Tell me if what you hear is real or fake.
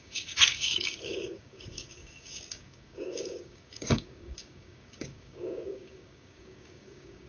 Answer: fake